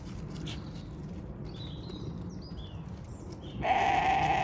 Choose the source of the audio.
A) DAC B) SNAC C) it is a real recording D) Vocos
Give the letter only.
C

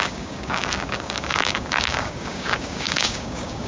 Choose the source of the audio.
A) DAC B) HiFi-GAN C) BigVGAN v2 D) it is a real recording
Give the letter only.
A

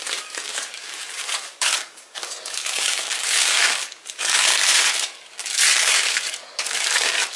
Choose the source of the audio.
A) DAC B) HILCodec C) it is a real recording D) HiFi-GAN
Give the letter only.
A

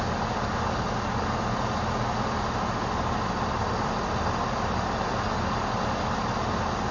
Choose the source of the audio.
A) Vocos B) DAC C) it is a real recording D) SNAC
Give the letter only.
C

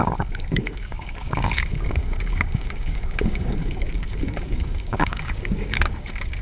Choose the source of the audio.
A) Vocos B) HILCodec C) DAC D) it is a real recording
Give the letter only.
C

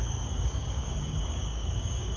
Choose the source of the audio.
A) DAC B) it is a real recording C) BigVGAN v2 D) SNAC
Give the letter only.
A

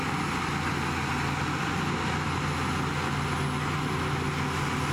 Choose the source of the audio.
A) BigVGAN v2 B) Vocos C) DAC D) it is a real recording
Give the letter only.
D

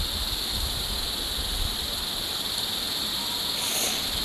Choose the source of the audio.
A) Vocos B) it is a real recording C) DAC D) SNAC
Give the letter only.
B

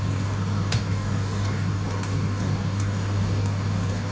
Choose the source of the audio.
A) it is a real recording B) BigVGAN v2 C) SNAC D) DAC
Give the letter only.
D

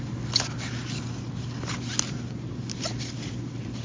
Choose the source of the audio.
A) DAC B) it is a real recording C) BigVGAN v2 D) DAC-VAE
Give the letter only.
B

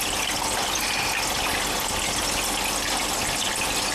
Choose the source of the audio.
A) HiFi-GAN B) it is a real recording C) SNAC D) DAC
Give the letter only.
B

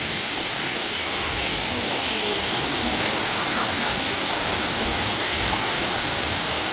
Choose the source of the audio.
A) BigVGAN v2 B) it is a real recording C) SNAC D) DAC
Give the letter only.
D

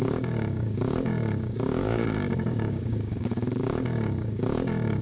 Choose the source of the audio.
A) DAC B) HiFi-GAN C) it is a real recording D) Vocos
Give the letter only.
A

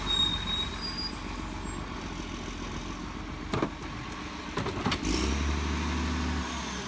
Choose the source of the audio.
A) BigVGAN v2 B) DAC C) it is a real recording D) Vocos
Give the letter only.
C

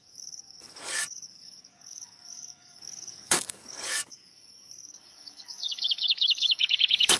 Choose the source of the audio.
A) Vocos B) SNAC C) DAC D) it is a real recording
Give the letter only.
C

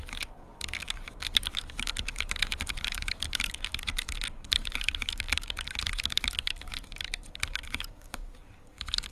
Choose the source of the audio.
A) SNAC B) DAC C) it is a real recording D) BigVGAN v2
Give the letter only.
B